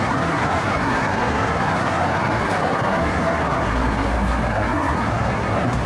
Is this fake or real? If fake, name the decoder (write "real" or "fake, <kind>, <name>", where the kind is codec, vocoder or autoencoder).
fake, codec, SNAC